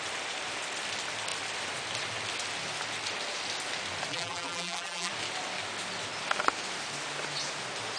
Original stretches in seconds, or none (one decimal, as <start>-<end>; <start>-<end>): 0.0-4.1; 5.1-8.0